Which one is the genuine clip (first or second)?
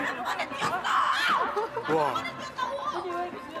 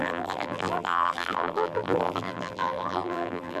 first